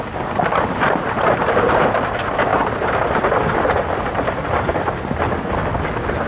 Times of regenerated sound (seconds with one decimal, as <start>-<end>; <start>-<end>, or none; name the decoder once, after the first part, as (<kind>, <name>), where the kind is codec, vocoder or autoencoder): none